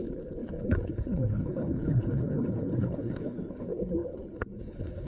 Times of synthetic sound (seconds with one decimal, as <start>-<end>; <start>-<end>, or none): 0.0-5.1

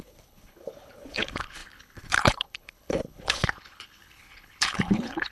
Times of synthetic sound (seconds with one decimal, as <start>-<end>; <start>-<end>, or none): 0.0-5.3

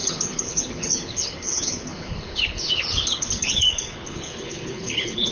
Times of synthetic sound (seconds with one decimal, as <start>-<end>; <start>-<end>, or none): 0.0-5.3

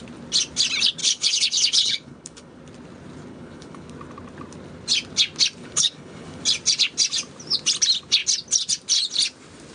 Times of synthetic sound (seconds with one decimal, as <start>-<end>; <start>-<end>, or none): 1.0-2.6; 3.3-3.9; 5.6-6.4

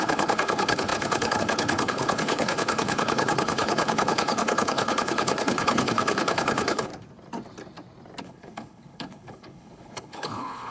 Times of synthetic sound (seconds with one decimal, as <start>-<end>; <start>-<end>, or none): 0.0-6.9; 8.2-10.7